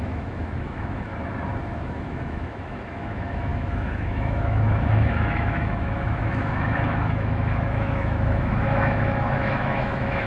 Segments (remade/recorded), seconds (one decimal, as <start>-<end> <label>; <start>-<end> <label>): 0.0-1.1 remade; 1.1-1.6 recorded; 1.6-10.3 remade